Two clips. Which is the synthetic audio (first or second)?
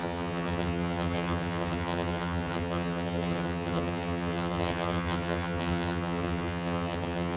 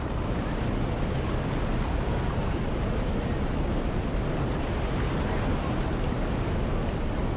first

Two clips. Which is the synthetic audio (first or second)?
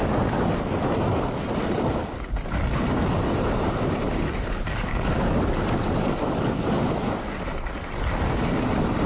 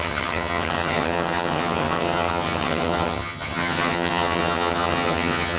second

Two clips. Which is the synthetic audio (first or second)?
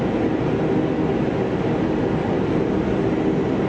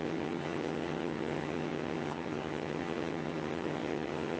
second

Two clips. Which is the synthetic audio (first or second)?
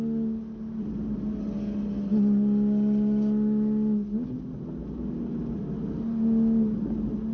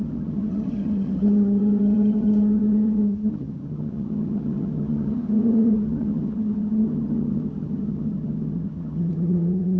second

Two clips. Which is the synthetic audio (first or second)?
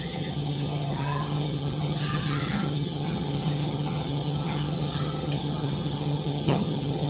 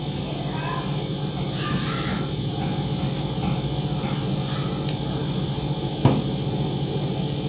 first